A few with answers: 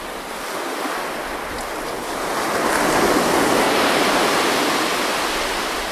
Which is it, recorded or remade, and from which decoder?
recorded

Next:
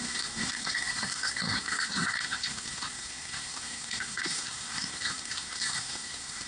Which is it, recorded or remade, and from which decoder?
remade, codec, SNAC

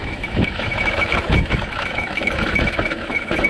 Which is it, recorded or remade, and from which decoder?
remade, autoencoder, DAC-VAE